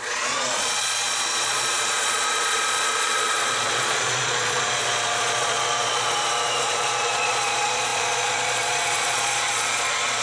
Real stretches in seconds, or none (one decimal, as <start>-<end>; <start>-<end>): none